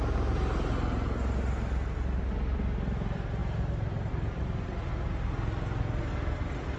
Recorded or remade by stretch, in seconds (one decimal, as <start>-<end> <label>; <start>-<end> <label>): 0.0-6.8 recorded